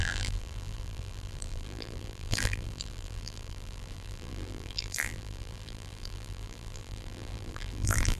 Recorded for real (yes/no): no